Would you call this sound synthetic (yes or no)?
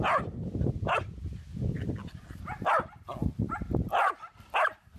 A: no